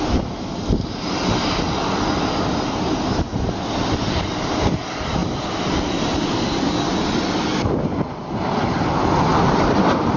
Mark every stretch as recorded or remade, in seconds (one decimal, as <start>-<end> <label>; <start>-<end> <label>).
0.0-5.2 recorded; 5.2-8.3 remade; 8.3-9.3 recorded; 9.3-10.2 remade